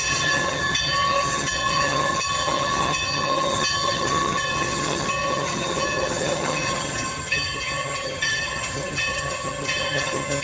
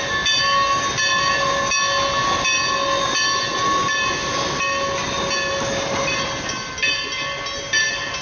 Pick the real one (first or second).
second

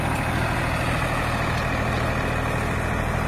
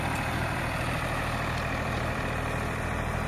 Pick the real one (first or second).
first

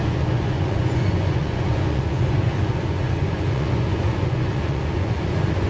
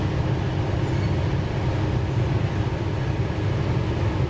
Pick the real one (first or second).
second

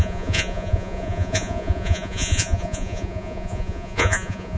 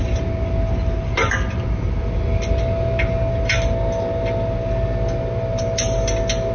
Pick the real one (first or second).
second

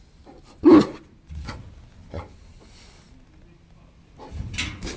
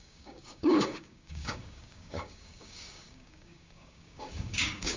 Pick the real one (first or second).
first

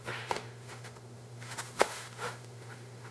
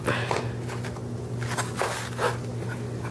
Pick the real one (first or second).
second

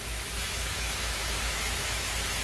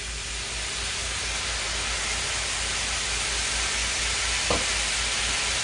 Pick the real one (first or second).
second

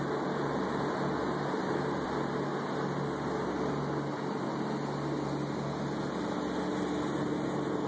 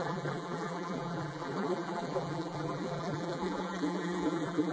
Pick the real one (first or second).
first